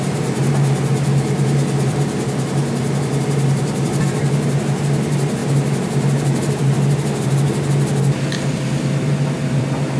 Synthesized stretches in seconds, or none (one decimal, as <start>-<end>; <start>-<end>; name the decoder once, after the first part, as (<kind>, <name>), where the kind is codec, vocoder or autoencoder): none